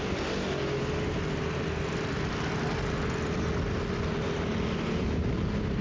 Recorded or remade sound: recorded